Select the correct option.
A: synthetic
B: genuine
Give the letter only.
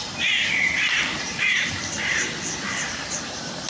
B